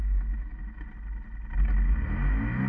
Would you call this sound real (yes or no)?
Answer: yes